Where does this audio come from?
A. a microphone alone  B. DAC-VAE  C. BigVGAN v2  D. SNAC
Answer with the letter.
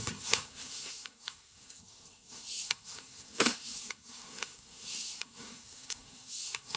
D